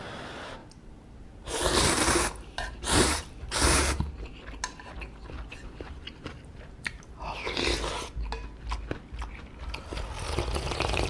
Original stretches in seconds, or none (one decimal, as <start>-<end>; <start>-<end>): 0.0-0.6; 4.1-5.5; 7.1-11.1